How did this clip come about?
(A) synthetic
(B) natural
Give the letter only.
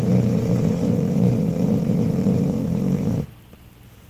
A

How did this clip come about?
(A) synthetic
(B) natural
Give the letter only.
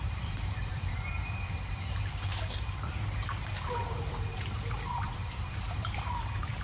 A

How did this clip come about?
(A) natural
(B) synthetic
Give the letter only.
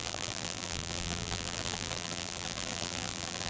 B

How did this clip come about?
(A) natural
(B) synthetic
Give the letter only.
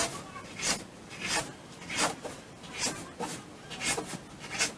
A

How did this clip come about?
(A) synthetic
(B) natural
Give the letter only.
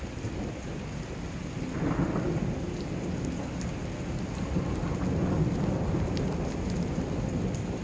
B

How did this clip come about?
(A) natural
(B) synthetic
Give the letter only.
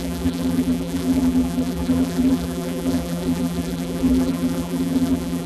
B